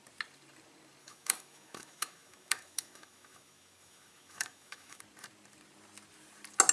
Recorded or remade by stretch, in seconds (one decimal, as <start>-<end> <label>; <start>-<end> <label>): 0.0-1.0 recorded; 1.0-5.0 remade; 5.0-6.7 recorded